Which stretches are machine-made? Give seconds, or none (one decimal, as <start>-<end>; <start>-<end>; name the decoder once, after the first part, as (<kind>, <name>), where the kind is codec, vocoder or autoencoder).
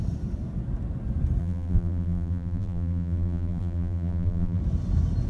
1.4-4.6 (vocoder, BigVGAN v2)